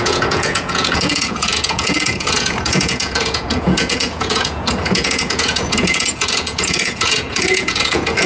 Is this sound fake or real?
fake